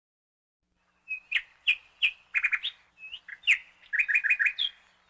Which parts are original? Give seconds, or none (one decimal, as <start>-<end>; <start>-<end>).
0.0-5.1